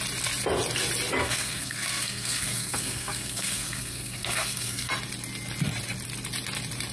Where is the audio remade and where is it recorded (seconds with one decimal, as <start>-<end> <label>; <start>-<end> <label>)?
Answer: 0.0-1.2 recorded; 1.2-4.9 remade; 4.9-6.9 recorded